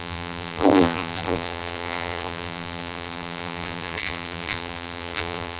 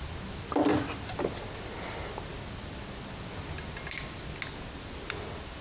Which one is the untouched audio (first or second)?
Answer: second